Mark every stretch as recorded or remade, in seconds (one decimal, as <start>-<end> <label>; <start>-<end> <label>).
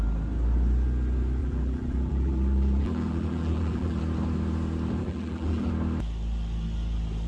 0.0-1.4 recorded; 1.4-4.0 remade; 4.0-5.0 recorded; 5.0-5.7 remade; 5.7-7.3 recorded